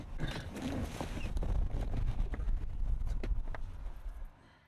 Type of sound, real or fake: real